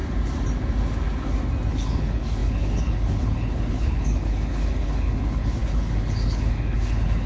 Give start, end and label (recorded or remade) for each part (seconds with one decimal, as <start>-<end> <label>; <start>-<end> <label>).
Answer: 0.0-1.7 recorded; 1.7-7.3 remade